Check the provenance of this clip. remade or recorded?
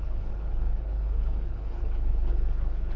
remade